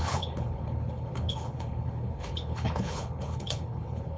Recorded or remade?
remade